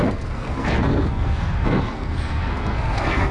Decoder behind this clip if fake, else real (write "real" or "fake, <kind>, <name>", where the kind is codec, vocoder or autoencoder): fake, codec, SNAC